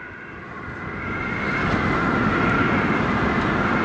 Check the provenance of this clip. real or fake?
real